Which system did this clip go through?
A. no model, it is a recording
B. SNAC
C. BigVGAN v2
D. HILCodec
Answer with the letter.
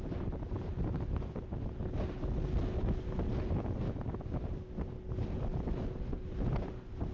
A